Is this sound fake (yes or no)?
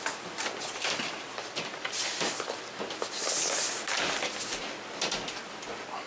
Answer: no